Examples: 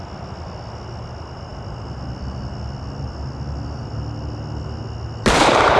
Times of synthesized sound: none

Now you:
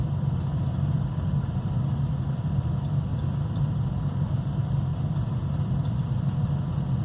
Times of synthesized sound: 0.0-3.1 (vocoder, BigVGAN v2); 3.6-7.0

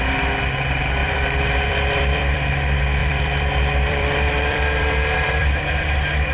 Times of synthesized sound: 1.0-2.5 (vocoder, BigVGAN v2); 3.0-5.7

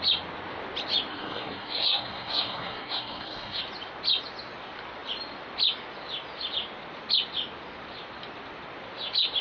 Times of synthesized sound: 1.1-3.6 (codec, SNAC)

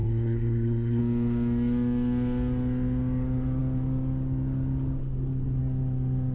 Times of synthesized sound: 0.0-1.0 (codec, SNAC)

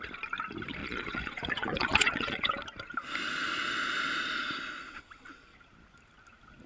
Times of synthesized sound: 0.8-2.5 (vocoder, Vocos)